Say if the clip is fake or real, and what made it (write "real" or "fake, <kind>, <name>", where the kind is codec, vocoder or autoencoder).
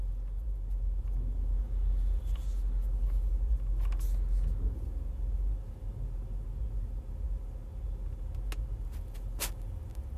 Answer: real